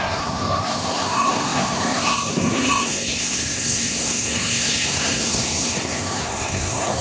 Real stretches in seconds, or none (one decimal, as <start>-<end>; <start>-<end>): none